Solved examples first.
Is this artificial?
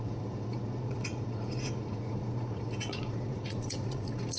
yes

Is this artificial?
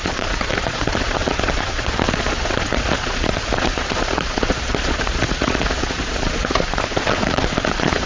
yes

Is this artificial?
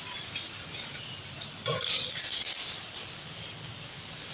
no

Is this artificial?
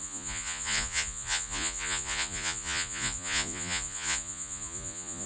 yes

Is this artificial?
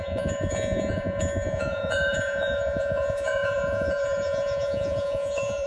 yes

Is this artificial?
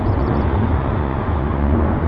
yes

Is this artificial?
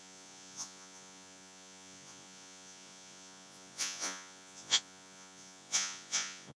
yes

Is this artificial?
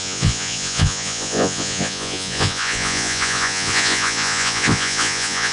yes